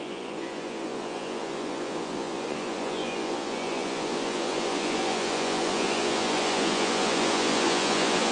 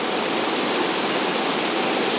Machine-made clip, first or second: first